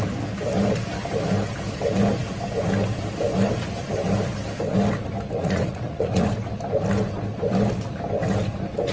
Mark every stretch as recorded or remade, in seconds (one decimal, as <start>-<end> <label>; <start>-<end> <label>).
0.0-5.4 recorded; 5.4-6.3 remade; 6.3-8.9 recorded